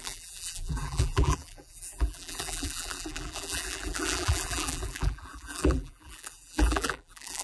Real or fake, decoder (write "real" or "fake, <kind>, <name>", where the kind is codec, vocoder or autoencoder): fake, vocoder, BigVGAN v2